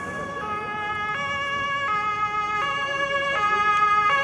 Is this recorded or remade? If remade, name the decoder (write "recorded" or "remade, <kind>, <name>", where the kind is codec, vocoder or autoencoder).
recorded